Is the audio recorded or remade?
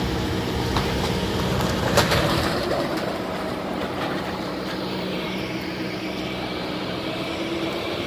remade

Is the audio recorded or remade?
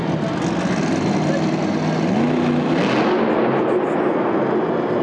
recorded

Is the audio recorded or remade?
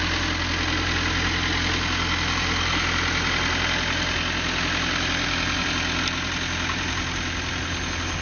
recorded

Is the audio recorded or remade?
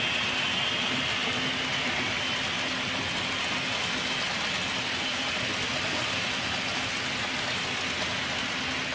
recorded